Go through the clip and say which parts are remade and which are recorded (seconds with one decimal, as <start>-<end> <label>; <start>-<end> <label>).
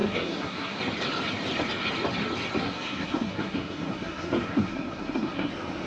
0.0-0.8 remade; 0.8-2.6 recorded; 2.6-5.5 remade; 5.5-5.9 recorded